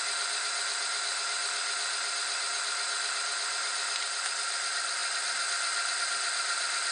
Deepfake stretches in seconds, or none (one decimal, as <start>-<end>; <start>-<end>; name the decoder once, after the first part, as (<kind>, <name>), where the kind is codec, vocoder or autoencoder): none